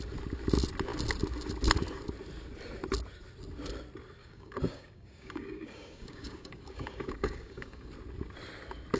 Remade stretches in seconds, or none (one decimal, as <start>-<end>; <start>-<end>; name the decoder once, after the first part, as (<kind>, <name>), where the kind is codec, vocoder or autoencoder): 4.2-7.9 (codec, DAC)